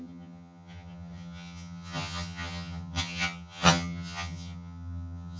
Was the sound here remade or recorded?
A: remade